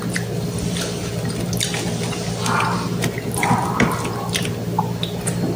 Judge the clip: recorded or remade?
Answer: recorded